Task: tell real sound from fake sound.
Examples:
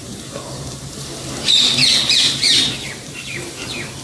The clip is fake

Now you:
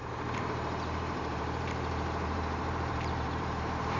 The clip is fake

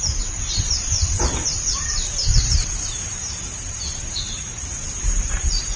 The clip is fake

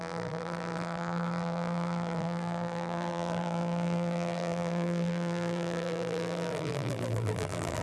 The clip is fake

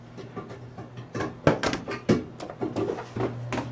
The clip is real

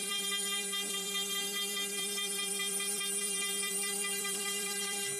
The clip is fake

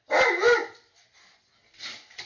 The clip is real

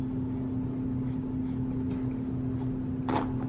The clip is real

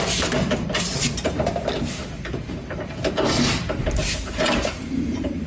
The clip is fake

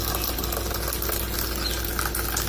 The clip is real